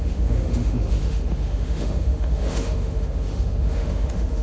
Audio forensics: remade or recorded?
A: remade